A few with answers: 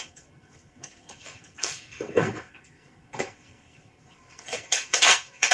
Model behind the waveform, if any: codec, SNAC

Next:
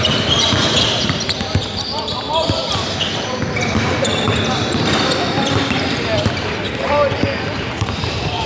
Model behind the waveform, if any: vocoder, BigVGAN v2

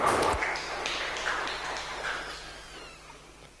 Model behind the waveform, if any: none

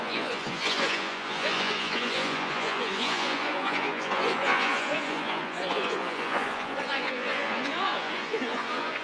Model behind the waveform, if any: vocoder, Vocos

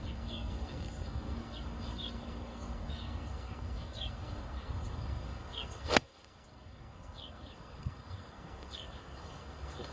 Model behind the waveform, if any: codec, SNAC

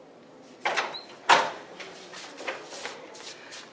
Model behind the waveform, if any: none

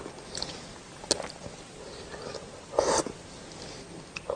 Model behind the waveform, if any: none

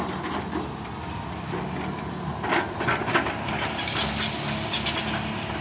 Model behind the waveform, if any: none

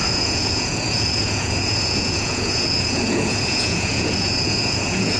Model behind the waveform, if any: vocoder, Vocos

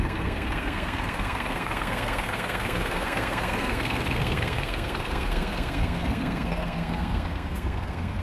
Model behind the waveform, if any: codec, SNAC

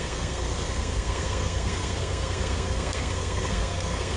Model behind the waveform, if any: codec, SNAC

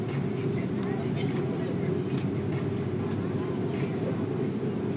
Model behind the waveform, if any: none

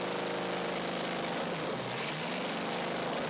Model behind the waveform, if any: none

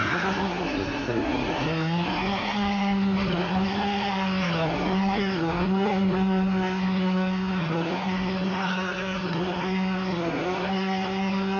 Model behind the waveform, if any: codec, SNAC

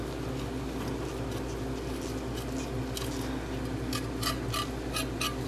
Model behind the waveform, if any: none